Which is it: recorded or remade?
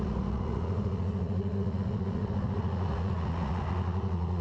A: remade